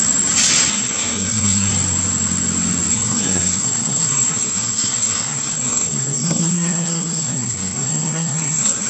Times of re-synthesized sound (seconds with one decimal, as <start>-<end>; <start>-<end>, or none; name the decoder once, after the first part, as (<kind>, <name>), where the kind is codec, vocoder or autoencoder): 0.7-1.7 (codec, SNAC); 2.9-8.9